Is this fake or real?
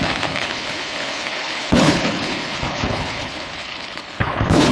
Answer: fake